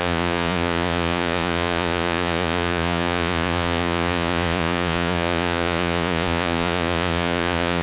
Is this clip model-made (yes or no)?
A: yes